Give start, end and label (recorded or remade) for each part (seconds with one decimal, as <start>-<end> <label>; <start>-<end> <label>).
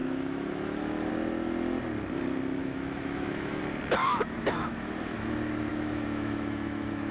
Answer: 0.0-1.1 remade; 1.1-2.6 recorded; 2.6-3.6 remade; 3.6-4.0 recorded; 4.0-5.3 remade; 5.3-5.7 recorded; 5.7-7.1 remade